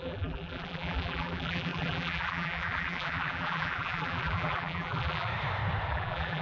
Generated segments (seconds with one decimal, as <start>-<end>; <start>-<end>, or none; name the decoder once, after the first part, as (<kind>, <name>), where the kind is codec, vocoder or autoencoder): 0.0-5.3 (vocoder, BigVGAN v2); 5.9-6.4